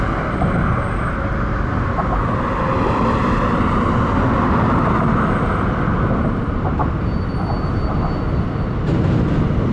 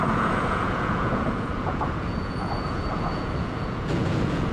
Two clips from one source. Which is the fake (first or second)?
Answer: second